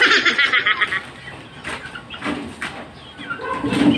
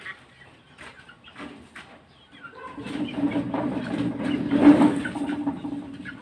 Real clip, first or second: first